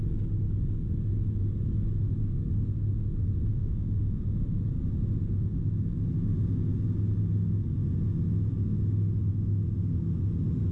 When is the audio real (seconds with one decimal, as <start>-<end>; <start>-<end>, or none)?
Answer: 0.0-3.5; 4.6-10.7

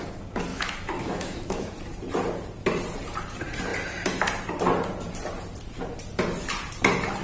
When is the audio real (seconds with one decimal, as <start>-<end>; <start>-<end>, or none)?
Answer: 0.0-0.5; 1.7-7.2

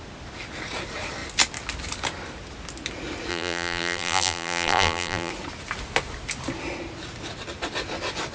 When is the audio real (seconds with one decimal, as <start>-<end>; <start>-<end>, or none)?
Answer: 0.0-3.3; 5.3-8.3

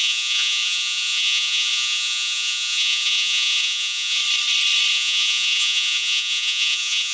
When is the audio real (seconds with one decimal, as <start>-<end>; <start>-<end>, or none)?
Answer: 4.2-4.9

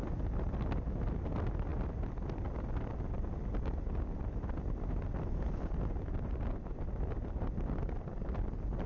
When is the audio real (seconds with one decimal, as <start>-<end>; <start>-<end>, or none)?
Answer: 0.0-8.9